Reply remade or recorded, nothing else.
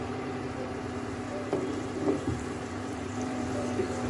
remade